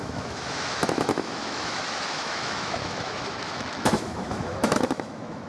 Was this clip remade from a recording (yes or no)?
yes